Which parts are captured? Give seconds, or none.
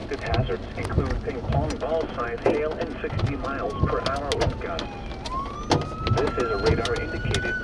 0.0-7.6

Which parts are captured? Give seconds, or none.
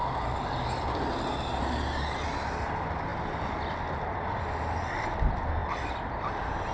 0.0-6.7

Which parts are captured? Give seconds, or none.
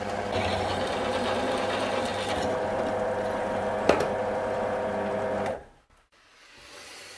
0.0-0.5; 1.3-7.2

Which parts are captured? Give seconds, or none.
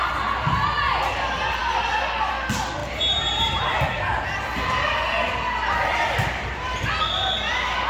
0.0-2.8; 7.0-7.9